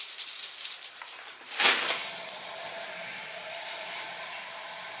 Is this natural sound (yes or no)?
no